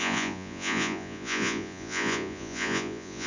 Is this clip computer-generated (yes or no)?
yes